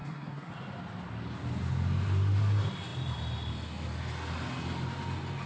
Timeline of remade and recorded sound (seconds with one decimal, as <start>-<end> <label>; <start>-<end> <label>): 0.0-0.5 remade; 0.5-5.5 recorded